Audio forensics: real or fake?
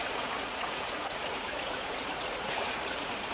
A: fake